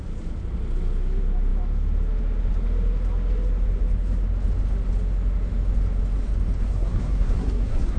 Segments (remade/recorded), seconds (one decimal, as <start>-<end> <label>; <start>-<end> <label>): 0.0-6.6 recorded; 6.6-8.0 remade